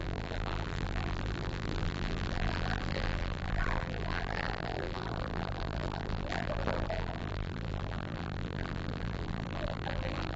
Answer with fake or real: fake